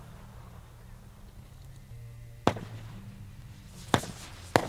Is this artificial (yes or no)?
no